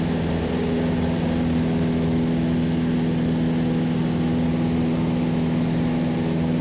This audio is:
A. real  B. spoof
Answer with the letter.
A